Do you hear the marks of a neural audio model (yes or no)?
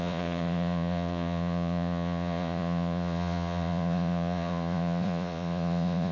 yes